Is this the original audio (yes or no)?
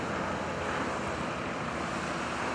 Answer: yes